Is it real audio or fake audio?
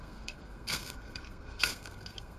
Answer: fake